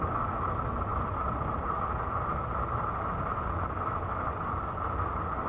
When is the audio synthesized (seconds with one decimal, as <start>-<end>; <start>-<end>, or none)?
none